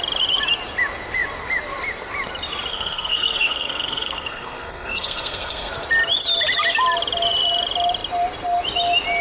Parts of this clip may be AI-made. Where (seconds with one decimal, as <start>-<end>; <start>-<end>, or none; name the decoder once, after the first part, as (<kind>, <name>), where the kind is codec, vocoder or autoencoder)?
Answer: 2.7-5.7 (codec, SNAC)